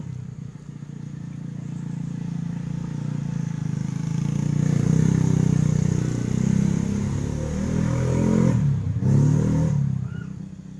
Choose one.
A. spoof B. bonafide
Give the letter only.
B